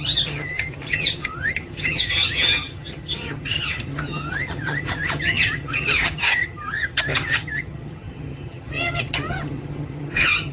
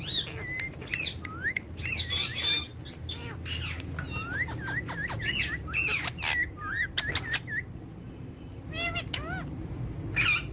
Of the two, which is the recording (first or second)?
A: second